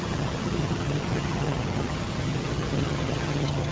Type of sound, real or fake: fake